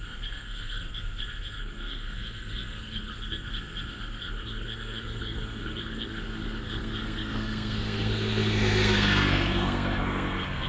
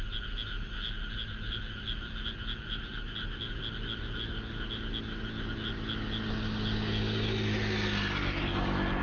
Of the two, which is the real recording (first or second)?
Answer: second